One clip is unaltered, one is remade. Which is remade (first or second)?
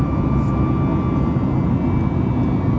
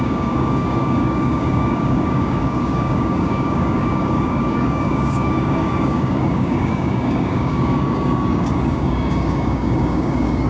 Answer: second